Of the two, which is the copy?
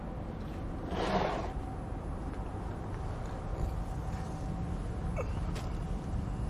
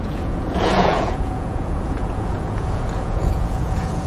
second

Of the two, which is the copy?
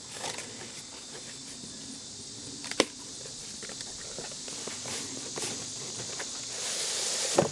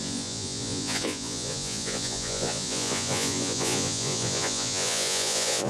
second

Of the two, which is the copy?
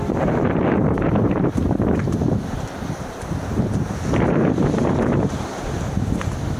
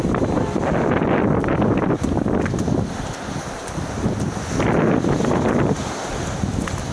first